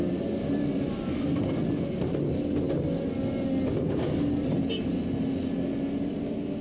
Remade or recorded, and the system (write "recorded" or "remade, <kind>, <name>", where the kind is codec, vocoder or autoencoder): recorded